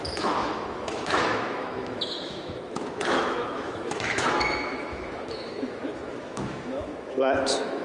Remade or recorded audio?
remade